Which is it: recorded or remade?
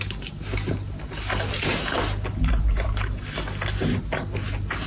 recorded